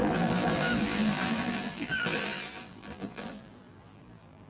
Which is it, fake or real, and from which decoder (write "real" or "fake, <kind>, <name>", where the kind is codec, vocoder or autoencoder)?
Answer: fake, vocoder, BigVGAN v2